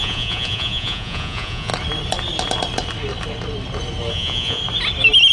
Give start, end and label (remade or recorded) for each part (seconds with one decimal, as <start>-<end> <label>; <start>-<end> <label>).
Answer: 0.0-1.7 remade; 1.7-4.1 recorded; 4.1-4.6 remade; 4.6-5.3 recorded